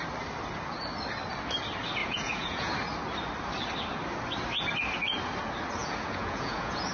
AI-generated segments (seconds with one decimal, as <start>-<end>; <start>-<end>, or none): 2.0-2.7; 5.8-6.9

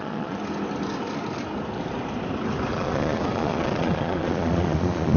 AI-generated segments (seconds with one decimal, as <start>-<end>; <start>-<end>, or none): 0.0-0.4; 2.7-5.2